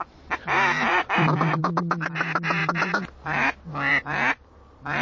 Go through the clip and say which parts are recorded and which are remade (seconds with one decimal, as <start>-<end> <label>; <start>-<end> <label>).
0.0-0.9 recorded; 0.9-1.6 remade; 1.6-5.0 recorded